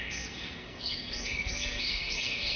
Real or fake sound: fake